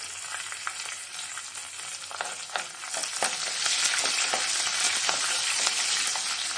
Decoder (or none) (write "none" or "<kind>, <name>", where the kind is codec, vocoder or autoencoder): none